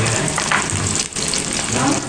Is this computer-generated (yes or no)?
no